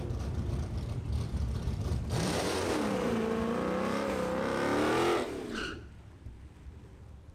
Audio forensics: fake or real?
real